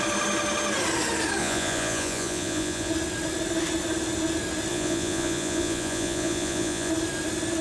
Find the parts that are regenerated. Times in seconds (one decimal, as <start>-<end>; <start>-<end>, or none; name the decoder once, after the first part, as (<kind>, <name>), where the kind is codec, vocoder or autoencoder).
1.4-2.9 (vocoder, Vocos); 4.7-6.9

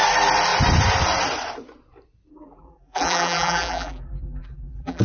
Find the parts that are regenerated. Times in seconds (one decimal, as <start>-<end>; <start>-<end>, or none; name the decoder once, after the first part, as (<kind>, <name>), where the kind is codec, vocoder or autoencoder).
2.3-5.0 (vocoder, BigVGAN v2)

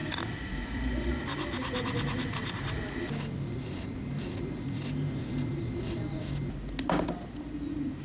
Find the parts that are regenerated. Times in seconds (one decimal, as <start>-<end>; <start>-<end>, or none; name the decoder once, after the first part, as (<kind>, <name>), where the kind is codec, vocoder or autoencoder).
none

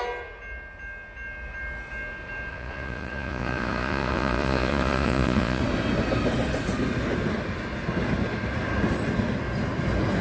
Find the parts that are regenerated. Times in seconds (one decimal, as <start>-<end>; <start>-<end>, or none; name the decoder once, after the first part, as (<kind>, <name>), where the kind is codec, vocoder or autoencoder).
2.5-5.6 (vocoder, Vocos)

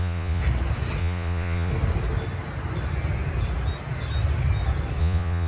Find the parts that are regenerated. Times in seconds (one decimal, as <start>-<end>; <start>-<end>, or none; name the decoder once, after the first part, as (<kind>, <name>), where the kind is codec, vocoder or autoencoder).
0.0-0.4 (vocoder, Vocos); 1.0-1.7; 5.0-5.5

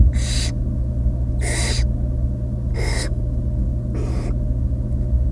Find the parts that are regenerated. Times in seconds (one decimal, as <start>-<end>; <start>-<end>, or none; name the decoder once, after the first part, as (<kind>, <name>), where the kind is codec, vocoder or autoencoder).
2.7-3.2 (codec, SNAC)

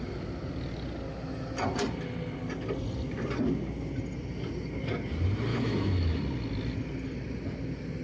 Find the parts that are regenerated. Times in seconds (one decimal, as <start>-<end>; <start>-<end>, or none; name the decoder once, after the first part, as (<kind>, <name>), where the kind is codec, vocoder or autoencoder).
5.5-6.2 (autoencoder, DAC-VAE)

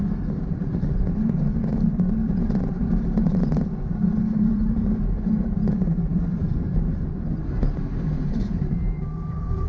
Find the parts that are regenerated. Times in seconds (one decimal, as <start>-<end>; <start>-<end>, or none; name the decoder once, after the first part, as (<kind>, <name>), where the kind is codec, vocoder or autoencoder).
0.0-9.7 (vocoder, BigVGAN v2)